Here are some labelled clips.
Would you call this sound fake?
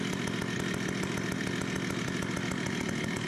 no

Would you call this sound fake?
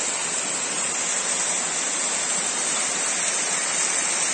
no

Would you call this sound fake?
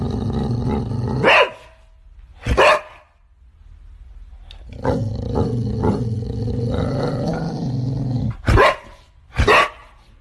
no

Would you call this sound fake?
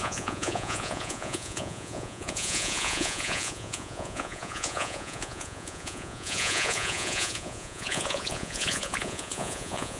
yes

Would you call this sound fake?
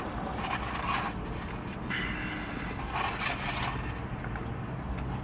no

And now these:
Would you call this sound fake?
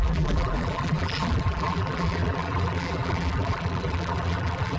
yes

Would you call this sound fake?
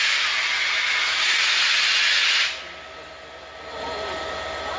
no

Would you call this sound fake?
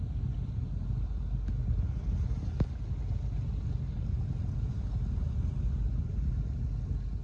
no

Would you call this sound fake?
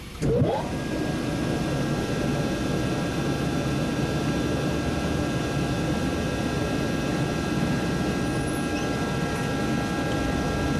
no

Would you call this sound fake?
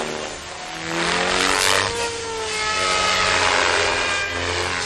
no